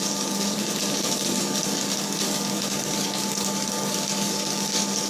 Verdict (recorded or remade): remade